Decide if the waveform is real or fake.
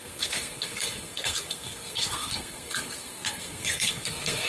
fake